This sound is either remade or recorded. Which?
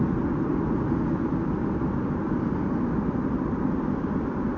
recorded